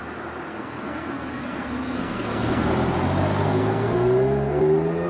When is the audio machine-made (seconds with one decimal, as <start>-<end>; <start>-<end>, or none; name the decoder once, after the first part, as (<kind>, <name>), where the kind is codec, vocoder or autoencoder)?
0.5-2.7 (codec, SNAC); 3.3-4.6